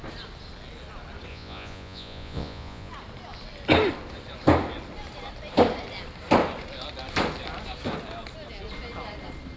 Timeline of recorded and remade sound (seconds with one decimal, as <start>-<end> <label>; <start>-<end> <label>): 0.0-1.3 recorded; 1.3-2.9 remade; 2.9-9.6 recorded